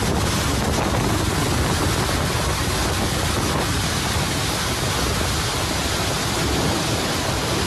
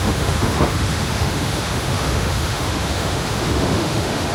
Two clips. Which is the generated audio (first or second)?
second